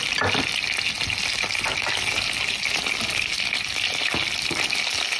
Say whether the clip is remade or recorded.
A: recorded